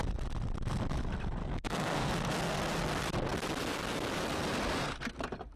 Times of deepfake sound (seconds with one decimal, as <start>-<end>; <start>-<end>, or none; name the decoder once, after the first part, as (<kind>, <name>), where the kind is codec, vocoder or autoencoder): 1.4-2.1 (codec, SNAC)